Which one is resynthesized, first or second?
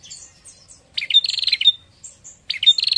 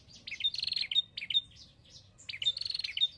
first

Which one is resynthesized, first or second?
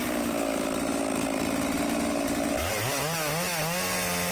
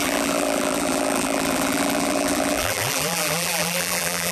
second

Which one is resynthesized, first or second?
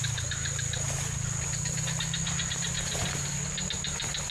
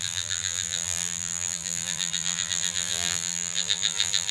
second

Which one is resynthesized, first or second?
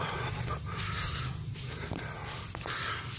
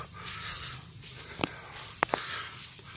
second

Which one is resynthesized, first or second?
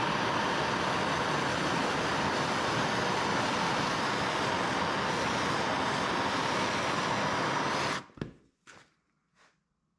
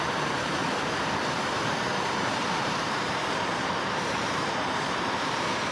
second